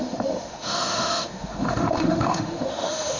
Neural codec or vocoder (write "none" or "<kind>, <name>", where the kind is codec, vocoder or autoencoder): autoencoder, DAC-VAE